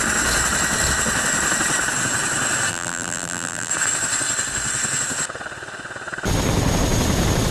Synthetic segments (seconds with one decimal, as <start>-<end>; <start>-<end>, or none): 2.7-3.7